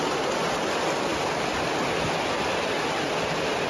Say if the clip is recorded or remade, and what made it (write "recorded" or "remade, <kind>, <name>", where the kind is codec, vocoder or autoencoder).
recorded